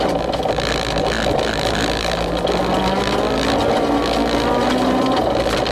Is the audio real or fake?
real